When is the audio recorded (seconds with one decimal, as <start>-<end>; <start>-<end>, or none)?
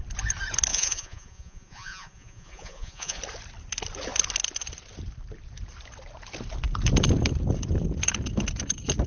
0.0-0.7; 3.2-9.1